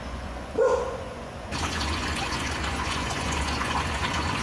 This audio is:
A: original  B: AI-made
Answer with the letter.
B